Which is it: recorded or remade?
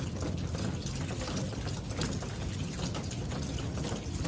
recorded